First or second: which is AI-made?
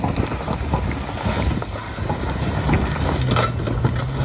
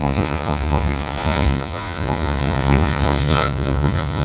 second